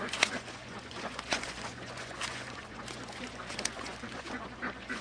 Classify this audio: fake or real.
fake